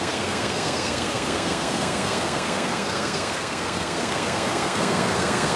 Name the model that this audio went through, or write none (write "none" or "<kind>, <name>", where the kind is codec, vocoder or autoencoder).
codec, SNAC